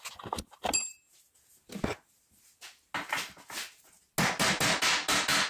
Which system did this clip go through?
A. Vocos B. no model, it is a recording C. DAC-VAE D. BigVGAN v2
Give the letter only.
B